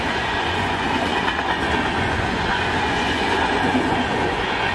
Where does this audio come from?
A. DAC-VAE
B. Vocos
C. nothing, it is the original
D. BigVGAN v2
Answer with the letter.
B